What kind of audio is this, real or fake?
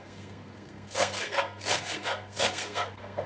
fake